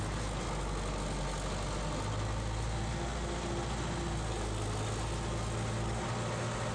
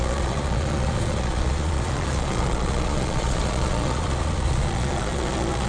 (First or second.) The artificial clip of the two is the second